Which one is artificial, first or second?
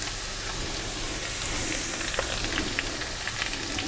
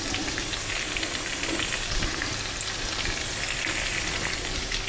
second